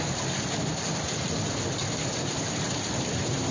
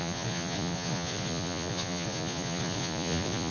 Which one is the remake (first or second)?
second